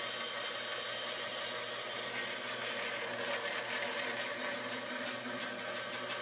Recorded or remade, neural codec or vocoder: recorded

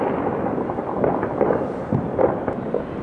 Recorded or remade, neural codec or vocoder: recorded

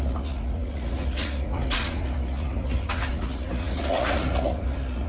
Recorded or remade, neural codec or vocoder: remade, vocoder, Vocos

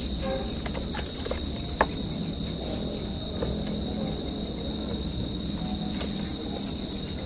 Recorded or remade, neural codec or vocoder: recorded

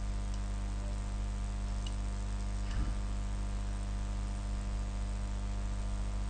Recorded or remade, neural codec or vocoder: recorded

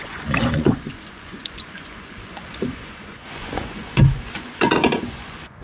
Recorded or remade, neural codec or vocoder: remade, vocoder, Vocos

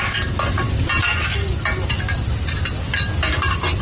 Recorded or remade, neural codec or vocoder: recorded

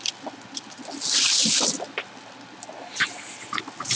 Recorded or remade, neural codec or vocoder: recorded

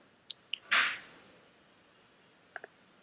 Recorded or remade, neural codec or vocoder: recorded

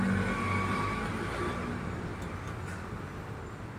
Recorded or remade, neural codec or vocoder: recorded